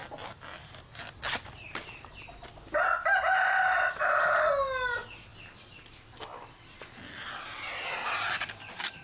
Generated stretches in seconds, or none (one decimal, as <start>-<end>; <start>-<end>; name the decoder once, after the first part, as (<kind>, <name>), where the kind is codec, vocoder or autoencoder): none